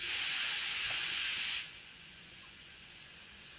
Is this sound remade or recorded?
remade